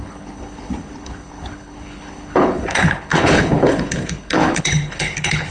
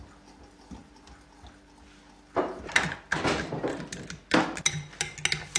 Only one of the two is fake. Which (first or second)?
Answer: first